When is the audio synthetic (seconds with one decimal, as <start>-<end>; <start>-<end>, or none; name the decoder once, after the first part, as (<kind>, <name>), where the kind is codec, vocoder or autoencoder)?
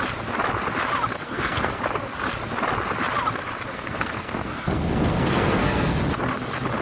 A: 1.2-1.8 (codec, SNAC); 3.7-6.0